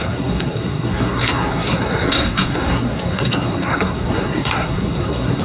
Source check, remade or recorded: remade